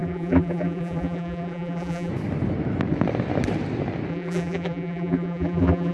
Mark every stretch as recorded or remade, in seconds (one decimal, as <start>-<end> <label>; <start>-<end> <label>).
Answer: 0.0-2.1 remade; 2.1-4.1 recorded; 4.1-5.9 remade